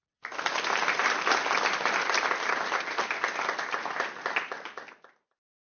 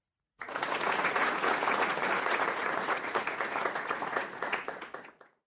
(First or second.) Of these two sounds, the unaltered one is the first